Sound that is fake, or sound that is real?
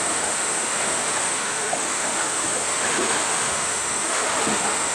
fake